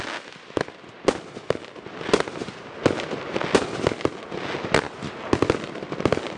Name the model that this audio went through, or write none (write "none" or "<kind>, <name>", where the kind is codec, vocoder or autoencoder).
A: none